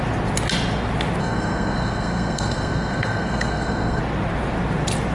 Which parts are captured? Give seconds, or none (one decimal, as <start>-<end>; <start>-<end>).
0.0-1.2; 4.0-5.1